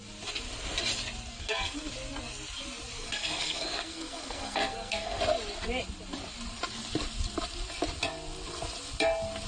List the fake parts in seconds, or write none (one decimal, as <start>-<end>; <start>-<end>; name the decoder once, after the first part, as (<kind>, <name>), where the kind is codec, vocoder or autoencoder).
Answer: 1.3-1.9 (codec, SNAC); 3.0-5.2